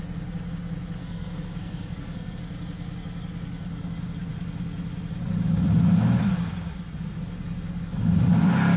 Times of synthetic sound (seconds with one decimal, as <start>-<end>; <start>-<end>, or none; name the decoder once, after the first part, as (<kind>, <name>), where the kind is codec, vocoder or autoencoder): 1.0-2.4 (codec, SNAC)